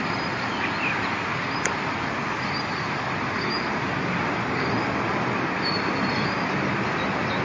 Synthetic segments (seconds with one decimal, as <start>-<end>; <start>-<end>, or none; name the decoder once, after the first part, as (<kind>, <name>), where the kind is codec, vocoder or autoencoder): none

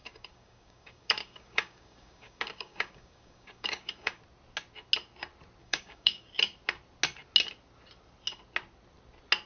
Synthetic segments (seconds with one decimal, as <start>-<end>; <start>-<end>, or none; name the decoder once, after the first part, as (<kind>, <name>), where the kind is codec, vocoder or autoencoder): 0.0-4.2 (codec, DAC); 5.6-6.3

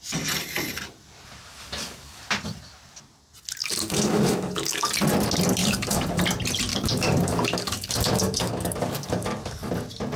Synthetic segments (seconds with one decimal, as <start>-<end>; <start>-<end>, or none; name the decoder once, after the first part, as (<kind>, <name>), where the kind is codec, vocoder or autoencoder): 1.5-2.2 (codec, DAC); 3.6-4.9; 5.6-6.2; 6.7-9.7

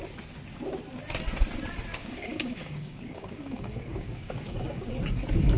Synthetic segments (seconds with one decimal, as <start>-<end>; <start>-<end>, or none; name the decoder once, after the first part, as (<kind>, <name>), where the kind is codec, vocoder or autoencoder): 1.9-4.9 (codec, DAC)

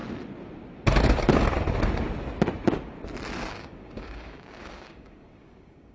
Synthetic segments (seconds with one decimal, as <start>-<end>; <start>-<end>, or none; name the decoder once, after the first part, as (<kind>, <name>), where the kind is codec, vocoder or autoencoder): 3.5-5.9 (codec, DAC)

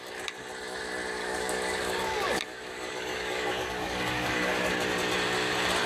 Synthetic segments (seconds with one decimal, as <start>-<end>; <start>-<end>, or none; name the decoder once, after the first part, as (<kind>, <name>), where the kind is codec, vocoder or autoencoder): 1.2-4.7 (codec, DAC)

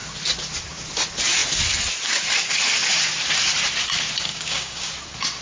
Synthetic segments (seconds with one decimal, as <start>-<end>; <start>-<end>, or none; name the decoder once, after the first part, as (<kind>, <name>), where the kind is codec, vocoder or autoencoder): 4.3-4.9 (codec, DAC)